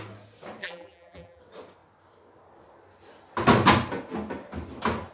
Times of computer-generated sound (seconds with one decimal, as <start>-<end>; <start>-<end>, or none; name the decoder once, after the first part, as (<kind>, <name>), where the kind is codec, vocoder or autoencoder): 0.6-1.4 (vocoder, BigVGAN v2)